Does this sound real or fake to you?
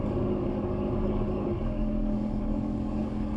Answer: fake